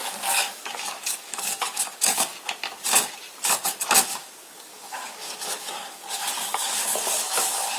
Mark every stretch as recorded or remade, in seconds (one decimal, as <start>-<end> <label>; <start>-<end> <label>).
0.0-2.3 remade; 2.3-4.1 recorded; 4.1-7.8 remade

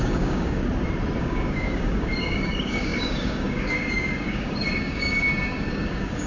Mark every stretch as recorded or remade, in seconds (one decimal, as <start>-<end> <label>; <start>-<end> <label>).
0.0-0.6 remade; 0.6-1.2 recorded; 1.2-6.3 remade

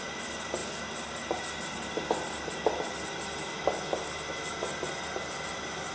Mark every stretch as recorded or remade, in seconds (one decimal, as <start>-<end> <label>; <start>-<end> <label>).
0.0-5.9 recorded